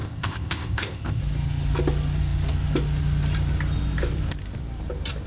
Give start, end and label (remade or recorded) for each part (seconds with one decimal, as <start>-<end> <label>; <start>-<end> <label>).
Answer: 0.0-1.2 remade; 1.2-5.3 recorded